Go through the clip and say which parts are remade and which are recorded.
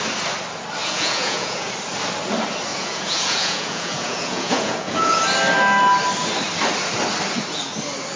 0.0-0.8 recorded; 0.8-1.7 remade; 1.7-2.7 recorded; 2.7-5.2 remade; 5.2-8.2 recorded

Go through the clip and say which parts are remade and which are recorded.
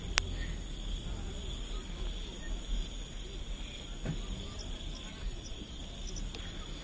0.0-5.1 recorded; 5.1-5.8 remade; 5.8-6.8 recorded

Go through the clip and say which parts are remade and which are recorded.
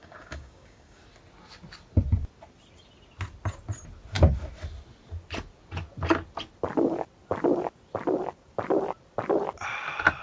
0.0-1.0 remade; 1.0-10.2 recorded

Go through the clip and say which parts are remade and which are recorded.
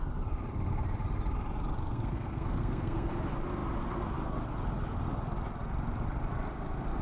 0.0-1.8 recorded; 1.8-3.1 remade; 3.1-7.0 recorded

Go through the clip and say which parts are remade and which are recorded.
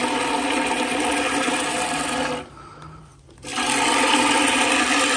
0.0-5.2 recorded